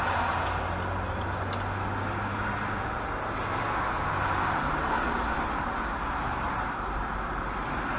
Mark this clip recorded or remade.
recorded